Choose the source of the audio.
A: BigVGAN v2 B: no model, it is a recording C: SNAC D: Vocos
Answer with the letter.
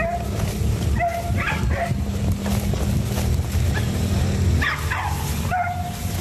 B